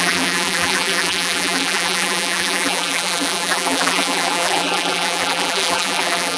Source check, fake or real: fake